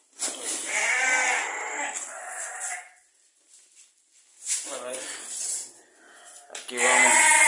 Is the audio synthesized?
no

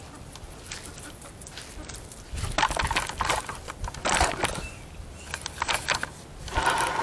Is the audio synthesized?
no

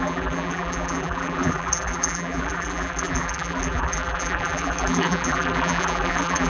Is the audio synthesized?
yes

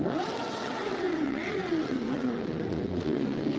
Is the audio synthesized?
yes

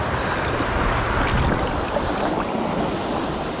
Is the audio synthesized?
no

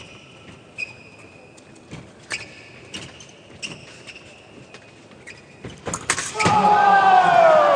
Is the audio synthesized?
no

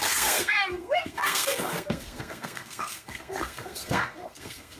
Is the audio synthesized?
yes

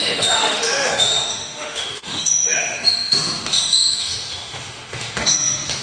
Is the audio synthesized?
yes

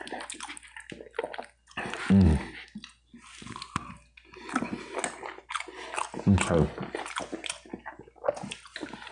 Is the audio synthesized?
no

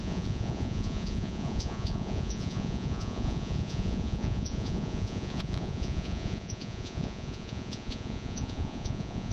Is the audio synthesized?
yes